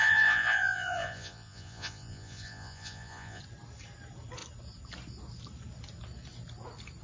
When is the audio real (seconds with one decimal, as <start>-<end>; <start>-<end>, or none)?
3.4-7.0